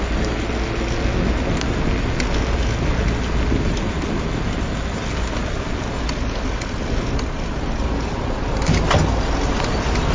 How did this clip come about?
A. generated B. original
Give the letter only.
B